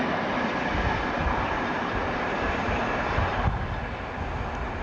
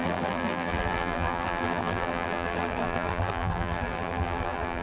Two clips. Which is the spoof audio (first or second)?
second